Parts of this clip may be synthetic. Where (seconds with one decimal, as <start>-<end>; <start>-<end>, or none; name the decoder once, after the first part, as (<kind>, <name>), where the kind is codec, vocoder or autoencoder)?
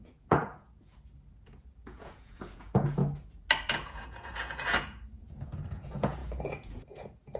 0.0-3.0 (vocoder, Vocos); 3.7-7.4